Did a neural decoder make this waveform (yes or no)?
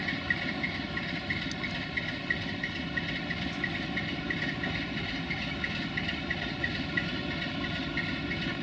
no